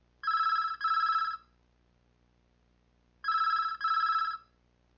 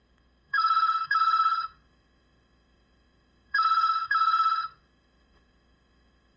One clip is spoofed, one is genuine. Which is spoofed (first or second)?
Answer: second